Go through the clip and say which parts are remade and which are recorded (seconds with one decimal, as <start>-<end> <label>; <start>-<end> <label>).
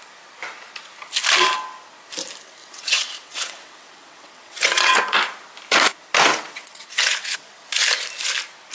0.0-2.6 recorded; 2.6-5.0 remade; 5.0-6.3 recorded; 6.3-7.5 remade; 7.5-8.7 recorded